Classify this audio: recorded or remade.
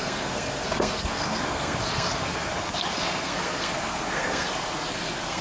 remade